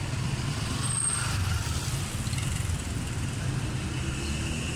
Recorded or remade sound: recorded